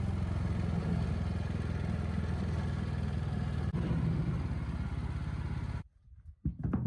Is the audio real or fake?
real